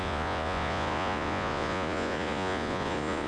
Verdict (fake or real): fake